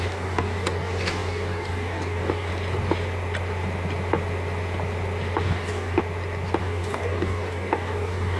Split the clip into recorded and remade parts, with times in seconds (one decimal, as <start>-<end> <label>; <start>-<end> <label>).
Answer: 0.0-2.5 remade; 2.5-5.4 recorded; 5.4-6.0 remade; 6.0-6.6 recorded; 6.6-8.4 remade